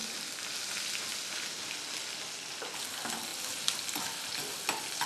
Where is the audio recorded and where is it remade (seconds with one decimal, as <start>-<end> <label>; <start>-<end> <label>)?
0.0-5.1 recorded